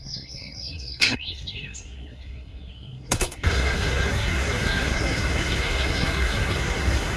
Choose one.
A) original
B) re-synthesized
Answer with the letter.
B